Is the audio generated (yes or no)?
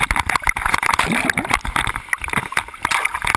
no